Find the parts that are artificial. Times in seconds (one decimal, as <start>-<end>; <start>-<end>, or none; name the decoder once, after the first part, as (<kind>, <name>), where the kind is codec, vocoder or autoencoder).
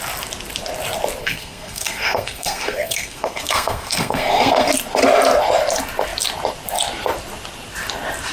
1.2-4.7 (codec, SNAC)